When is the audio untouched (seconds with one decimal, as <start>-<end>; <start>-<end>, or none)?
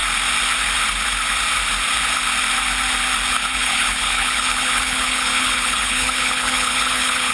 0.0-3.3